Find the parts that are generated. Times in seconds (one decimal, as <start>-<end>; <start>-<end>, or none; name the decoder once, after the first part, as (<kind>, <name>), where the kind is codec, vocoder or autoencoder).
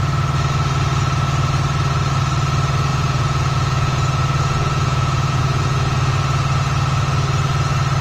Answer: 2.9-6.1 (vocoder, Vocos)